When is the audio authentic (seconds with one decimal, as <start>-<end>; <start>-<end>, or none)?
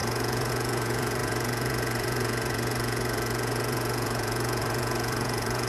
none